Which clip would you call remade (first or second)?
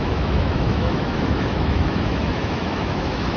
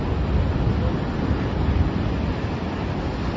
first